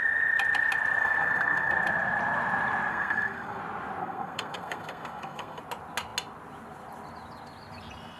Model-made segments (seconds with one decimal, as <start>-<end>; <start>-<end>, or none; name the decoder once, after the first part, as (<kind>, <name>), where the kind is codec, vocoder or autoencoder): 1.0-1.7 (codec, SNAC); 2.9-3.6; 4.0-5.6